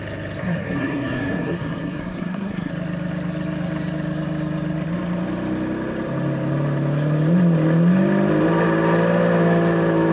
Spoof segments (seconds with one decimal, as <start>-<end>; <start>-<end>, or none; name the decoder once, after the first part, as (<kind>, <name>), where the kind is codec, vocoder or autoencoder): 0.4-2.7 (codec, SNAC)